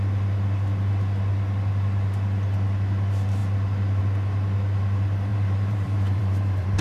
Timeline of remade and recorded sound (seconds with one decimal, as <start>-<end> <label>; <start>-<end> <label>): 0.0-5.3 recorded; 5.3-6.8 remade